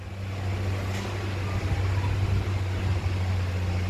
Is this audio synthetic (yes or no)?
no